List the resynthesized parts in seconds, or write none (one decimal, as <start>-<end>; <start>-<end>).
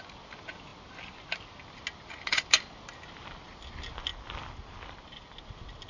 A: none